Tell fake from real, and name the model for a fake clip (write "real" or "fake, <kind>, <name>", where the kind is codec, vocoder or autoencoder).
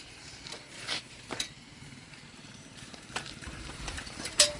fake, vocoder, BigVGAN v2